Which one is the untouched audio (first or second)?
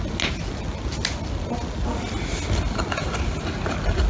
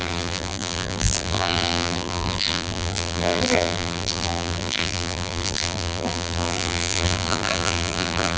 first